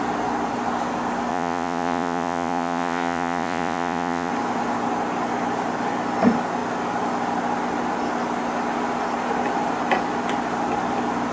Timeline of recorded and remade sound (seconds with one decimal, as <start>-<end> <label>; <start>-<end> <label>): 0.0-1.3 recorded; 1.3-4.3 remade; 4.3-11.3 recorded